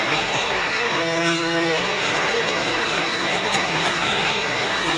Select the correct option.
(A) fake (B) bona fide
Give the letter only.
A